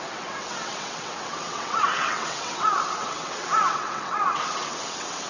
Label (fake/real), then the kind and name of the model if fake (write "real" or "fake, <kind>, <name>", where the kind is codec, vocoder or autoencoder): fake, vocoder, WaveNeXt